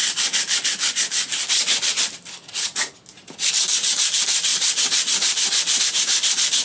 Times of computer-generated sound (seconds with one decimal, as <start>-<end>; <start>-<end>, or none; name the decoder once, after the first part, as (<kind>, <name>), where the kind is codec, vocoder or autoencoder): none